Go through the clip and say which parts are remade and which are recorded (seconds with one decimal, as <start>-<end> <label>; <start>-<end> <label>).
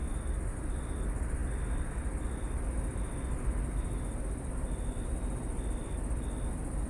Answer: 0.0-6.9 recorded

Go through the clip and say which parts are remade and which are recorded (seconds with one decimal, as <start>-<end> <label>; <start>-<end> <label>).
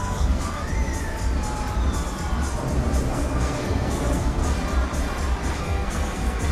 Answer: 0.0-0.6 remade; 0.6-3.1 recorded; 3.1-4.4 remade; 4.4-5.5 recorded; 5.5-6.5 remade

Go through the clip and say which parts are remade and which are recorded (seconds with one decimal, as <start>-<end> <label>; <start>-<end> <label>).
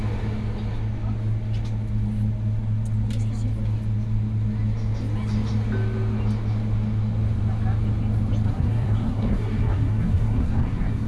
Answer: 0.0-8.5 recorded; 8.5-11.1 remade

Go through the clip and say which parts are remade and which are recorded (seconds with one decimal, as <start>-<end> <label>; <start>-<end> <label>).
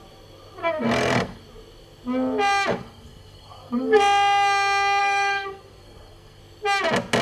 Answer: 0.0-0.6 recorded; 0.6-1.4 remade; 1.4-2.7 recorded; 2.7-4.0 remade; 4.0-5.0 recorded; 5.0-6.4 remade; 6.4-7.2 recorded